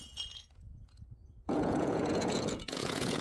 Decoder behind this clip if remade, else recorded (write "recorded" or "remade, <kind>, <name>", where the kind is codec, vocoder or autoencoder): remade, vocoder, Vocos